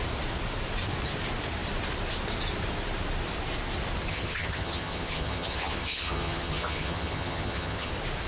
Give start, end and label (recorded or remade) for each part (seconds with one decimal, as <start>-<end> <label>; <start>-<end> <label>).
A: 0.0-4.1 recorded; 4.1-7.9 remade; 7.9-8.3 recorded

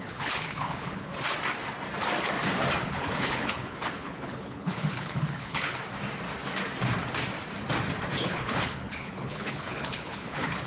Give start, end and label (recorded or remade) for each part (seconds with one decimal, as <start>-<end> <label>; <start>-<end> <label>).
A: 0.0-1.1 remade; 1.1-2.8 recorded; 2.8-5.8 remade; 5.8-8.2 recorded; 8.2-10.7 remade

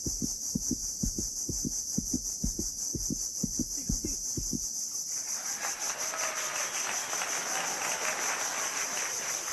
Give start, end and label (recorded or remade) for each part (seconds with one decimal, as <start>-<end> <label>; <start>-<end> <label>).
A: 0.0-0.8 recorded; 0.8-1.4 remade; 1.4-9.5 recorded

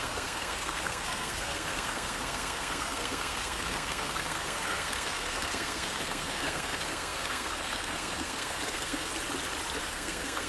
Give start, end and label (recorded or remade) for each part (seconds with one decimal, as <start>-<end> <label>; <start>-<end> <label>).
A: 0.0-9.1 remade; 9.1-9.8 recorded; 9.8-10.5 remade

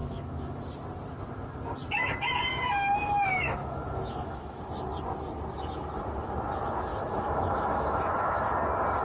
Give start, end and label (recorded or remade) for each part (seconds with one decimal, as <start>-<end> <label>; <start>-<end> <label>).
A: 0.0-0.6 remade; 0.6-2.5 recorded; 2.5-4.6 remade; 4.6-6.9 recorded; 6.9-8.4 remade; 8.4-9.0 recorded

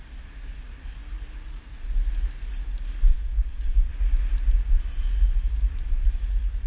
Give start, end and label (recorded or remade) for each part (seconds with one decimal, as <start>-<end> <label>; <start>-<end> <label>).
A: 0.0-3.1 recorded; 3.1-3.9 remade; 3.9-6.7 recorded